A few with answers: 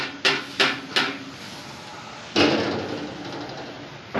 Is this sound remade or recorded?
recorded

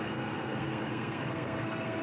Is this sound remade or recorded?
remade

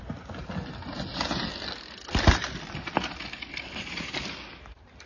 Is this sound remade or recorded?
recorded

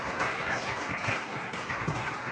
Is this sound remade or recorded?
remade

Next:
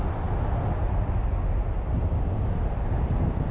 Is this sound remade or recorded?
recorded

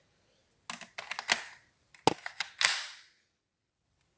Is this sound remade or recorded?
recorded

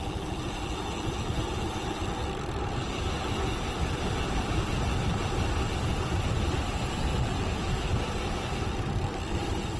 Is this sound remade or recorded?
recorded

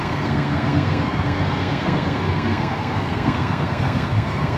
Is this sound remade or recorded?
remade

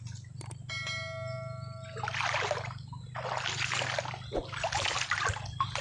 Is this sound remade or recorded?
recorded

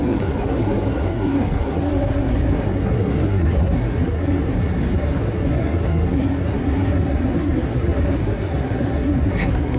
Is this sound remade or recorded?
remade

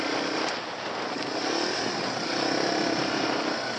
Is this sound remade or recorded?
recorded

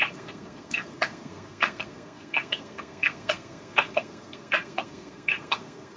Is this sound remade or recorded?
remade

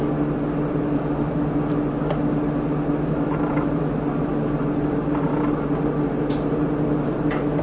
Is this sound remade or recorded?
recorded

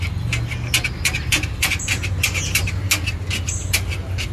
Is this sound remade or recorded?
recorded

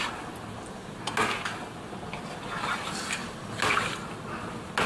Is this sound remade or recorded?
recorded